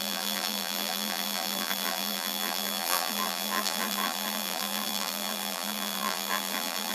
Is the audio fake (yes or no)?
yes